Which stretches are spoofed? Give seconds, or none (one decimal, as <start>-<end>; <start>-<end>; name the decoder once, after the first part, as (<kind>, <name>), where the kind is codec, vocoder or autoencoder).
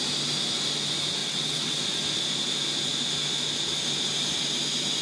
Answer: 1.2-1.8 (vocoder, WaveNeXt)